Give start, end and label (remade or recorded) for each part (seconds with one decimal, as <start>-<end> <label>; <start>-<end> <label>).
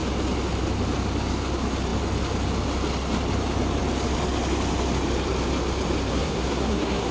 0.0-6.1 recorded; 6.1-7.1 remade